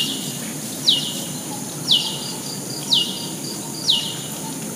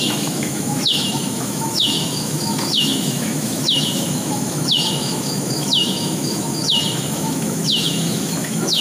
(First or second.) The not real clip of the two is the second